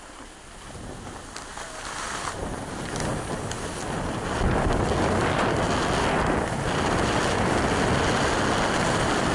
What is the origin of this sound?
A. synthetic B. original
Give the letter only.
B